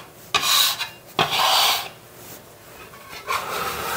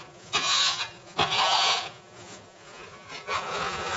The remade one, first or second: second